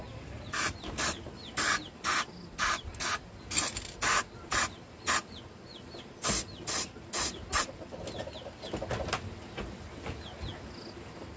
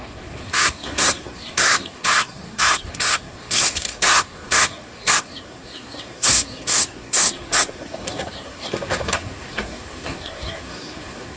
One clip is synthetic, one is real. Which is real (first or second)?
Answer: first